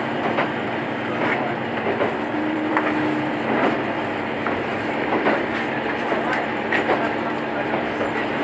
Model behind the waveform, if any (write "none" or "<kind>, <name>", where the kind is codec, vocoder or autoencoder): vocoder, BigVGAN v2